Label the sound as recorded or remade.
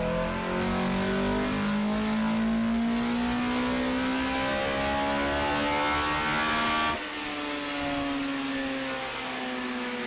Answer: recorded